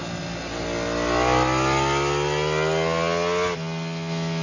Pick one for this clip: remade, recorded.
recorded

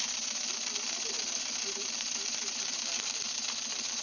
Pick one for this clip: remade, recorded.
remade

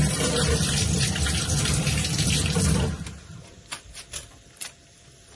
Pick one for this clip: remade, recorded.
remade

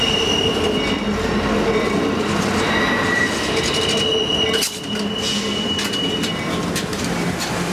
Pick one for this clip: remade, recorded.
recorded